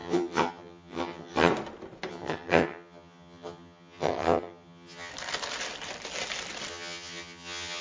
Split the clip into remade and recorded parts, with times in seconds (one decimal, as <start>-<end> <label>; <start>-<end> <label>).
0.0-1.5 remade; 1.5-2.1 recorded; 2.1-5.1 remade; 5.1-6.7 recorded; 6.7-7.8 remade